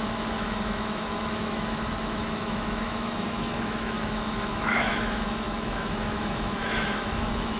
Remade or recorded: remade